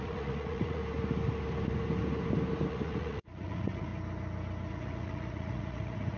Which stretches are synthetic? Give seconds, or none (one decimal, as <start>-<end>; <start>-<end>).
0.0-0.8; 2.7-3.9; 4.7-6.2